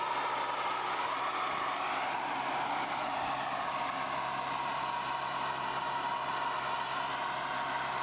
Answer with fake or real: real